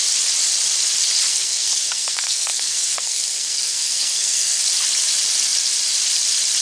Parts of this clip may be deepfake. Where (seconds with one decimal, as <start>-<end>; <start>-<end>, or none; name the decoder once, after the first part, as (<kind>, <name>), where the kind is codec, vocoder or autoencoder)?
1.3-4.6 (codec, SNAC)

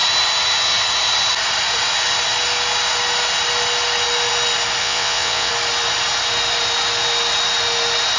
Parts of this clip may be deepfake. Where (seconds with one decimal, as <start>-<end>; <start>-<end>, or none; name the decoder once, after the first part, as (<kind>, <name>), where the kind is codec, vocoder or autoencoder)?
4.8-5.5 (vocoder, WaveNeXt)

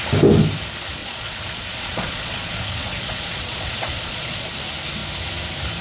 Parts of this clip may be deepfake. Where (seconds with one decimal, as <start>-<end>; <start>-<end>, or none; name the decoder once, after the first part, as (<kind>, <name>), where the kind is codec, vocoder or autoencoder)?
1.0-4.5 (vocoder, Vocos)

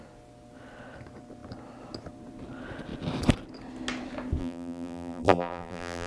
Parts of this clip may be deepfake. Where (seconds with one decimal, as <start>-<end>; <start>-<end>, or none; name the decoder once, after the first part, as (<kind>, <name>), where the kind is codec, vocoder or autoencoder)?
4.4-6.1 (vocoder, BigVGAN v2)

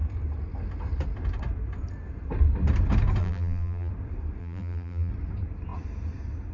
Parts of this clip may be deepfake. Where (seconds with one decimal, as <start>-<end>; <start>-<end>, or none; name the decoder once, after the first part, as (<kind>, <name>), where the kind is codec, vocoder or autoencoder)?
3.2-3.9 (vocoder, BigVGAN v2); 4.4-5.1

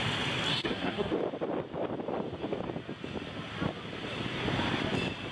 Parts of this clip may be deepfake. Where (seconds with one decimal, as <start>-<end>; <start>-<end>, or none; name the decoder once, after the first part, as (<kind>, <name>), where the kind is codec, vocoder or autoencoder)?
0.5-1.1 (codec, SNAC)

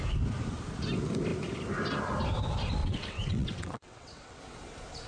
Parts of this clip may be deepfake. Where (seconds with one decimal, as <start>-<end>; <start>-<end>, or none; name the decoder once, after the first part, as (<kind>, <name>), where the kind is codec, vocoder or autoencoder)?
2.8-4.4 (vocoder, WaveNeXt)

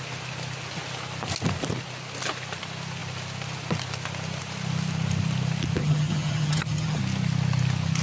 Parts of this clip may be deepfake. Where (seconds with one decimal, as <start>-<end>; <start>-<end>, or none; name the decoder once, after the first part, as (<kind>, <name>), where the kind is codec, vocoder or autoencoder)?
5.8-7.0 (vocoder, HiFi-GAN)